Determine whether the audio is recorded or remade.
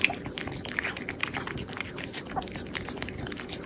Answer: recorded